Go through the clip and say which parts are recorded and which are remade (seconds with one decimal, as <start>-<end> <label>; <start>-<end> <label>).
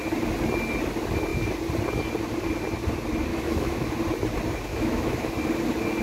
0.0-3.3 recorded; 3.3-4.0 remade; 4.0-4.7 recorded; 4.7-5.3 remade; 5.3-6.0 recorded